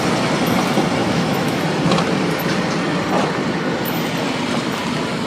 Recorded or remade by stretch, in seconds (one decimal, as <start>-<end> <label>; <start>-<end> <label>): 0.0-1.0 recorded; 1.0-1.6 remade; 1.6-5.3 recorded